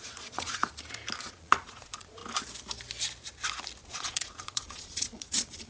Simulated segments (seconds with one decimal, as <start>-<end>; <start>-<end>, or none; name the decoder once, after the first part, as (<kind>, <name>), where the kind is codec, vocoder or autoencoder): 0.0-0.6 (vocoder, Vocos); 1.2-2.2; 3.8-5.7